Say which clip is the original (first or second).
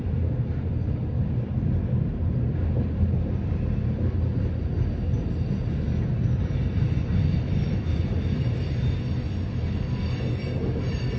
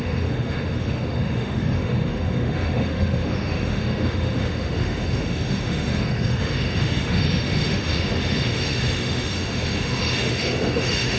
first